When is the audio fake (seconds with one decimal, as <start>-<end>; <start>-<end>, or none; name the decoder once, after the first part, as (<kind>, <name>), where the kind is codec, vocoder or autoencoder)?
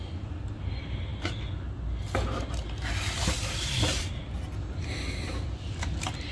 none